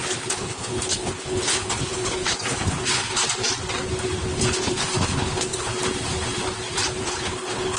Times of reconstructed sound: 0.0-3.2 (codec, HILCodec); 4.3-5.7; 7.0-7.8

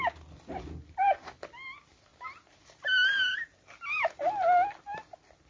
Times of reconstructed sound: none

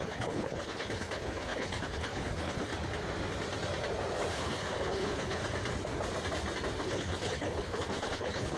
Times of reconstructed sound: 0.0-2.7 (codec, HILCodec); 4.3-5.4; 6.8-8.6

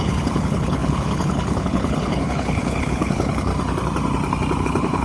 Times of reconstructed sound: 0.0-3.5 (codec, HILCodec); 4.6-5.0